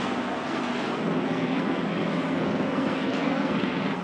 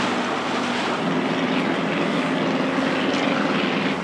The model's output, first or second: first